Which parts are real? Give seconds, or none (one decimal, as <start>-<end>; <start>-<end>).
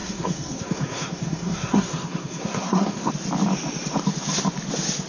3.1-5.1